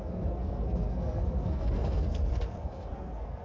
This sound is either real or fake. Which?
fake